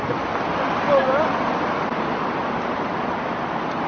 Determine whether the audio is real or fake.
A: real